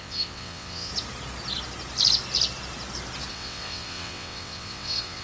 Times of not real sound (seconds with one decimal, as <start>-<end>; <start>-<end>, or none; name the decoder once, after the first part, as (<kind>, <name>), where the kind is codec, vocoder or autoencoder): 0.0-0.9 (vocoder, WaveNeXt); 3.3-5.2